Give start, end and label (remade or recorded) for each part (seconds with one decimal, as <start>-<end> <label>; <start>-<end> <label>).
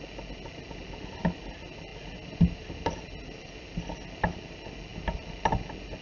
0.0-6.0 recorded